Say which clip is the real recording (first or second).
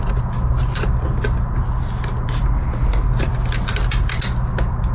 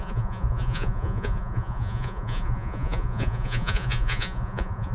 first